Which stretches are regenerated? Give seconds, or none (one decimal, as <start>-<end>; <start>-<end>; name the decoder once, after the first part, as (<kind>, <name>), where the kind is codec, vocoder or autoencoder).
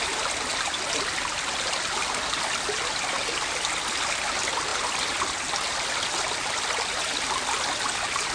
none